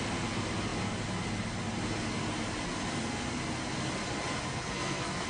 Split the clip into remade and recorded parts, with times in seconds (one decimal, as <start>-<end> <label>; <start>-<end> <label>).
0.0-4.5 recorded; 4.5-5.3 remade